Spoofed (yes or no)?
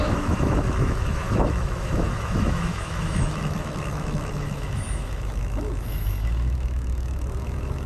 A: yes